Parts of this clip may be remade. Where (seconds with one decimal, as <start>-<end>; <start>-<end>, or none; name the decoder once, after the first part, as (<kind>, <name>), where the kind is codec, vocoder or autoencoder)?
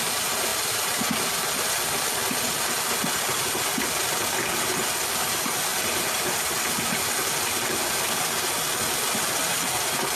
none